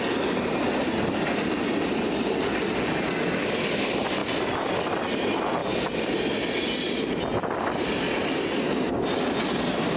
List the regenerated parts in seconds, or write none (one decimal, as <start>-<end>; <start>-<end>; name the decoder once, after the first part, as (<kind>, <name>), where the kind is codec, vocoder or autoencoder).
none